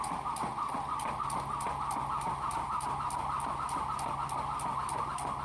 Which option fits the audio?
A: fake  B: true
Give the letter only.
B